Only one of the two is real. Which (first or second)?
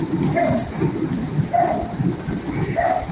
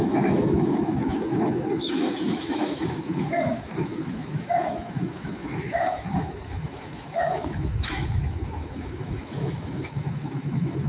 first